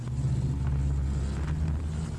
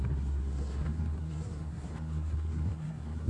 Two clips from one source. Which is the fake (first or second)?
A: second